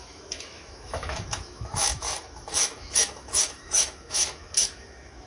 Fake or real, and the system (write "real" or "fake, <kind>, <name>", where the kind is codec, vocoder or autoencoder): fake, autoencoder, DAC-VAE